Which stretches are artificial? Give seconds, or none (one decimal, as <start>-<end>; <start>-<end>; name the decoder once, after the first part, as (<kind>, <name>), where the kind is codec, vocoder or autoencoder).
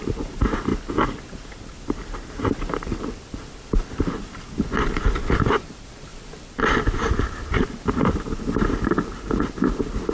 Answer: none